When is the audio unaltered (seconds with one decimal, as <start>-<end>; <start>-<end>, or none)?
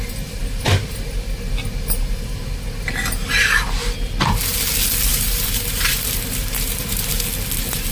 0.0-0.4; 1.1-5.1; 7.1-7.9